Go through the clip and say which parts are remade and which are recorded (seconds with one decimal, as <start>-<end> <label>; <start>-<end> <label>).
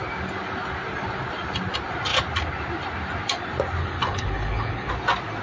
0.0-3.8 recorded; 3.8-4.9 remade; 4.9-5.4 recorded